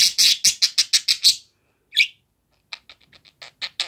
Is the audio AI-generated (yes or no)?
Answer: no